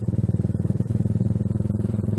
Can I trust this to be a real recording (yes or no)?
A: no